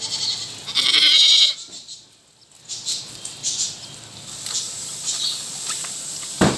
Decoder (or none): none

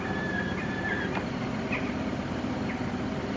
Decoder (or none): vocoder, BigVGAN v2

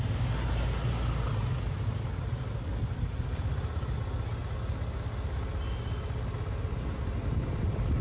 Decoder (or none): none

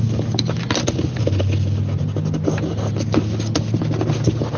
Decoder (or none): none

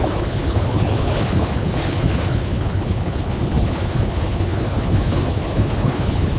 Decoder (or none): codec, HILCodec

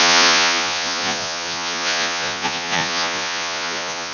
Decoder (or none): vocoder, Vocos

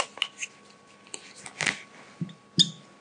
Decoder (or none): none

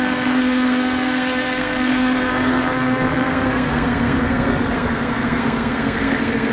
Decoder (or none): codec, SNAC